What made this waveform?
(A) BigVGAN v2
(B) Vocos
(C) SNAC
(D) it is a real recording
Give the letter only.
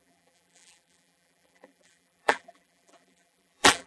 A